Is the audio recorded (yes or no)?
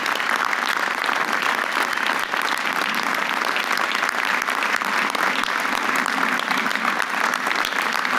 yes